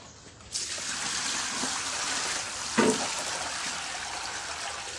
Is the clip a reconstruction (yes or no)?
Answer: no